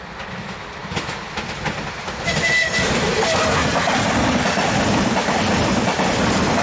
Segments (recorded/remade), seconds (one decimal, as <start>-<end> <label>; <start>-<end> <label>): 0.0-6.6 recorded